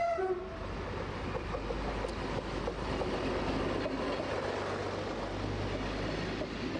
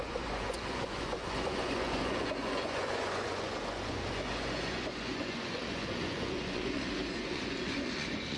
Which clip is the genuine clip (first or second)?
first